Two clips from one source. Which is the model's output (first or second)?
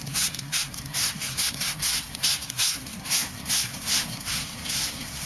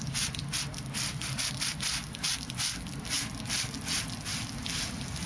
first